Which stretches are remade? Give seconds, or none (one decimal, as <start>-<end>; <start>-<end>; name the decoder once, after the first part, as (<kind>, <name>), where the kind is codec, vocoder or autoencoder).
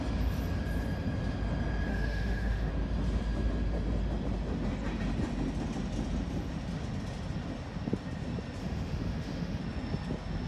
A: 1.9-2.7 (autoencoder, DAC-VAE); 8.6-9.6